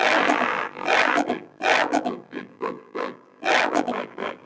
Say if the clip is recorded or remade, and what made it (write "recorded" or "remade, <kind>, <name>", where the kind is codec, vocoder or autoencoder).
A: remade, vocoder, BigVGAN v2